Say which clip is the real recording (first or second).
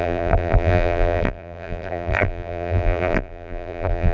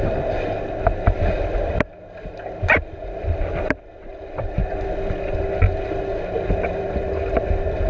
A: second